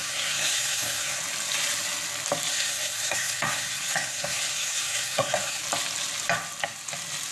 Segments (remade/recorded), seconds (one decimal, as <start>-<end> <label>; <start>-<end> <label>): 0.0-1.2 remade; 1.2-2.5 recorded; 2.5-5.6 remade; 5.6-7.3 recorded